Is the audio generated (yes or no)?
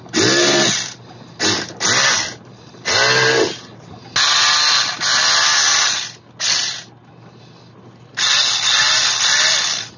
no